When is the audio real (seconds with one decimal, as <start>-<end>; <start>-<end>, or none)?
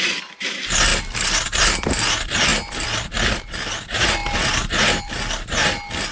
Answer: 0.0-4.2; 5.1-6.1